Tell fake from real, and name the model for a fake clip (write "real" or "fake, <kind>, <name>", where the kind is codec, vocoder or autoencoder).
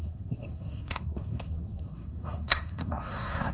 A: fake, codec, SNAC